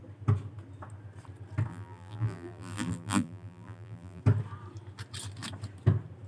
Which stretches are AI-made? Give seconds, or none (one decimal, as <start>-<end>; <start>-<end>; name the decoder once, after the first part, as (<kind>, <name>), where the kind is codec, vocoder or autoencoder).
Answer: 1.7-4.2 (vocoder, BigVGAN v2)